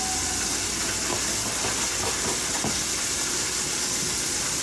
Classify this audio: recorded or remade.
recorded